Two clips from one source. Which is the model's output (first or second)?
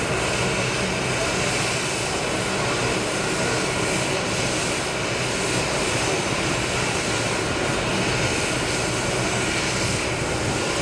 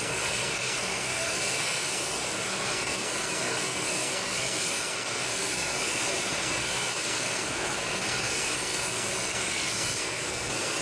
second